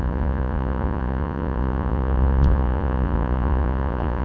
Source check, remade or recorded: remade